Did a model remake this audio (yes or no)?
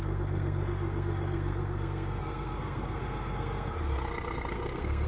yes